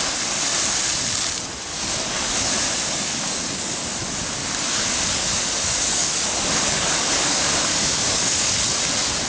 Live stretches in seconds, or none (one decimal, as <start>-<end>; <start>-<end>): 0.0-1.7; 2.5-3.1; 4.0-4.4; 8.5-9.3